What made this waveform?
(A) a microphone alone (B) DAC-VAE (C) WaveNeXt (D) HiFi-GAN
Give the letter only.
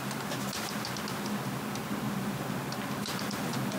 A